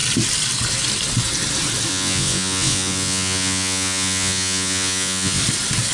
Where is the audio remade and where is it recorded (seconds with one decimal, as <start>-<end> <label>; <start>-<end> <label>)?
0.0-1.9 recorded; 1.9-5.4 remade; 5.4-5.9 recorded